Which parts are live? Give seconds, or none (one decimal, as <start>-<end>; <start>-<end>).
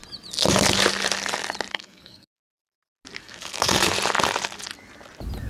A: 0.0-1.7; 2.3-3.2; 3.9-5.5